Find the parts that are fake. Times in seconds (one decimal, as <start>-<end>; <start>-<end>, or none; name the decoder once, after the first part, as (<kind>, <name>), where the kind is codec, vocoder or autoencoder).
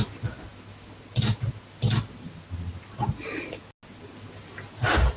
none